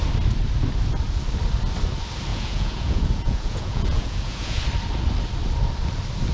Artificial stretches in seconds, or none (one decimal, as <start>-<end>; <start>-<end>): 2.3-4.6